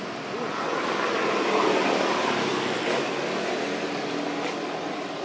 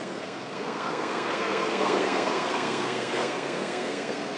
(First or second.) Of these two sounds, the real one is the first